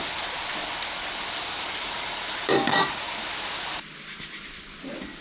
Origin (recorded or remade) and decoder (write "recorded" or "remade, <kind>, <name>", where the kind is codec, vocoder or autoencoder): recorded